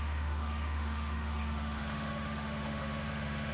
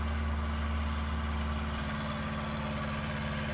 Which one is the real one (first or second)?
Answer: second